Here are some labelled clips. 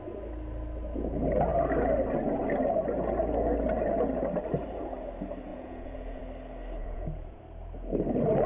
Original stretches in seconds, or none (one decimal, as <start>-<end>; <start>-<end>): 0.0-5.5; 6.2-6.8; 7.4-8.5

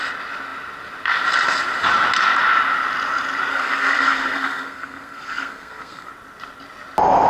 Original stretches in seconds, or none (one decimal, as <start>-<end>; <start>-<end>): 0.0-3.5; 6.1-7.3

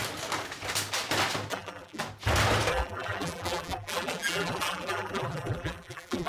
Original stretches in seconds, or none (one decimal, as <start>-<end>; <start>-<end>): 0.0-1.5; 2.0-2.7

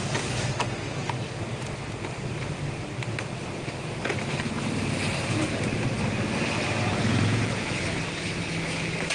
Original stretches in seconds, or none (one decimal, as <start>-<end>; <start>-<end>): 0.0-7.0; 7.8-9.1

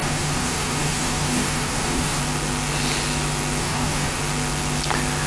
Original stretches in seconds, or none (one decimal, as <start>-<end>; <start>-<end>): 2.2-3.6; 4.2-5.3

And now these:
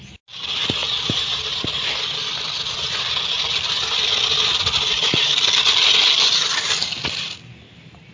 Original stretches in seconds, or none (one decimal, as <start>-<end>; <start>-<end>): 0.0-8.1

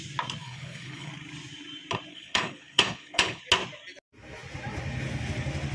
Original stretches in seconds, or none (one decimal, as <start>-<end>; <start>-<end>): 0.0-0.4; 1.1-2.1; 3.4-5.7

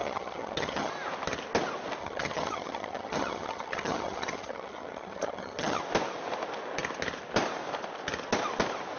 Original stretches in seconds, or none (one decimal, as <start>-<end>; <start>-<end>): 0.9-2.0; 5.8-9.0